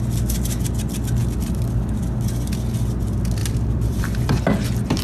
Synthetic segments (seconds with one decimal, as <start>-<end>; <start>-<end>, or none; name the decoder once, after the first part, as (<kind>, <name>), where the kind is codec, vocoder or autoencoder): 1.2-2.0 (vocoder, BigVGAN v2); 3.4-4.4